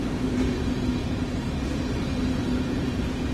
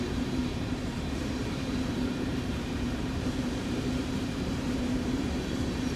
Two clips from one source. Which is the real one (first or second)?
first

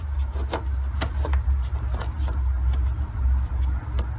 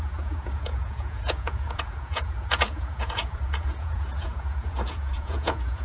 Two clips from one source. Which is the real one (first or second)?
first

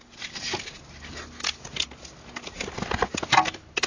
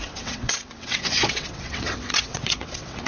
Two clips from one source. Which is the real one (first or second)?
first